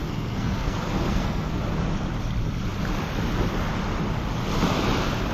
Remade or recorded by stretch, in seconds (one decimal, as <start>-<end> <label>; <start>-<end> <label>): 0.0-1.6 remade; 1.6-5.3 recorded